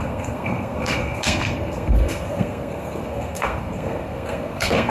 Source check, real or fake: fake